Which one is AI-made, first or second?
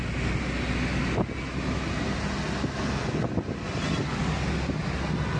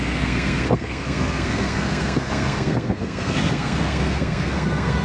second